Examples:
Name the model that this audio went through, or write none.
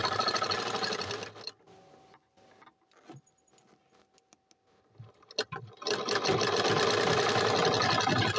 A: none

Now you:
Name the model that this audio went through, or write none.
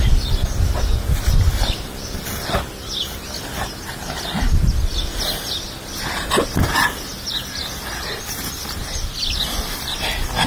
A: none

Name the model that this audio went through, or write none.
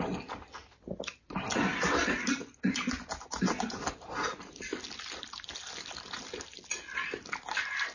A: none